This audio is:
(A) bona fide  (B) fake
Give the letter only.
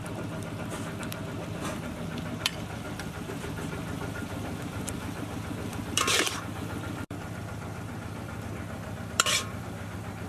B